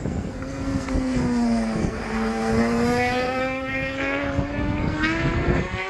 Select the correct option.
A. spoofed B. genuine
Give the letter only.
A